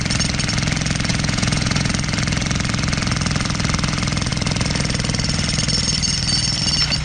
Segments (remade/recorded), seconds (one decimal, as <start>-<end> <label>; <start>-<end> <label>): 0.0-1.1 recorded; 1.1-1.9 remade; 1.9-7.0 recorded